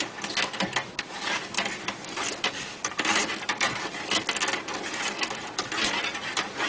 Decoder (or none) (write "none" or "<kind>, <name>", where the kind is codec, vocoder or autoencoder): none